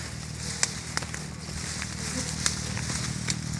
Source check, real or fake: real